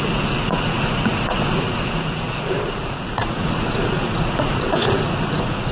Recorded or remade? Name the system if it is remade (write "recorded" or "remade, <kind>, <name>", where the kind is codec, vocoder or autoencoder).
remade, vocoder, Vocos